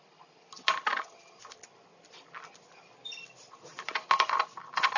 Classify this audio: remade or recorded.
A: recorded